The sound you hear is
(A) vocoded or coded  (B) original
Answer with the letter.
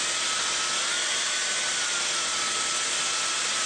B